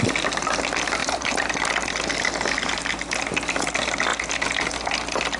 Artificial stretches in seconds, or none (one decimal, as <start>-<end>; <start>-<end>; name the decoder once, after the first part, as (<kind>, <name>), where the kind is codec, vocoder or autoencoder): 1.0-1.5 (vocoder, BigVGAN v2)